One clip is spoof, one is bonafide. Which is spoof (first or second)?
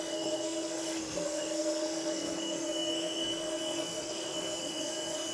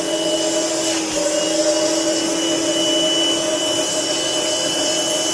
first